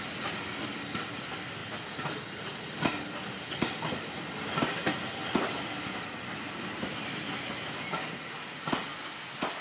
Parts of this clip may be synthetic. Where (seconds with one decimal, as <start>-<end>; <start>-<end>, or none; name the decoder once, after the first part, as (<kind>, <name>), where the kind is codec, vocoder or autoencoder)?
none